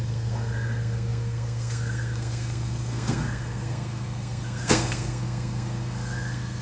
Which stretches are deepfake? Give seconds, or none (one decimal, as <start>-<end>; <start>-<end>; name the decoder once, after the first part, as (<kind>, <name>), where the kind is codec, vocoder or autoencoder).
0.0-6.6 (codec, SNAC)